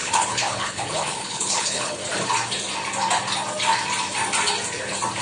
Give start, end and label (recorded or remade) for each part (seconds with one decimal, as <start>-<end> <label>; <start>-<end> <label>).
0.0-2.0 remade; 2.0-5.2 recorded